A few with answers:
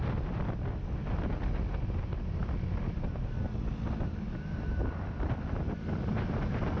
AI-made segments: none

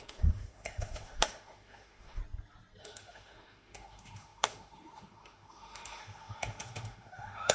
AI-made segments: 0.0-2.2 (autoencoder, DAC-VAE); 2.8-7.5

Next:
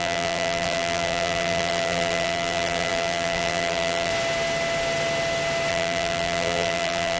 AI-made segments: 0.0-4.1 (vocoder, BigVGAN v2); 5.7-7.2

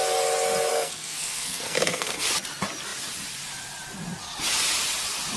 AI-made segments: 0.7-2.3 (codec, SNAC)